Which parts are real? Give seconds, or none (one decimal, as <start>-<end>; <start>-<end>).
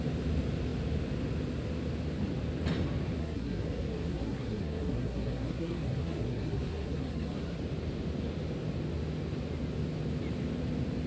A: 0.0-3.2; 7.6-11.1